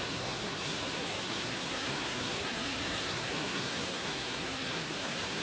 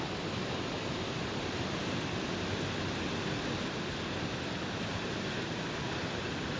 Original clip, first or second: second